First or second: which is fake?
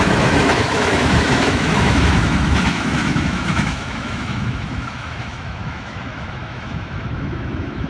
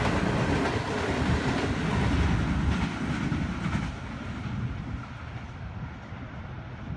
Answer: first